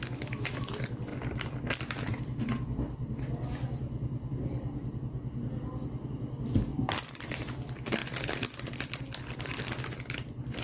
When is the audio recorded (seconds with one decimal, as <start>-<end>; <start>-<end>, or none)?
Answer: 0.0-6.7; 7.3-8.0; 9.0-10.6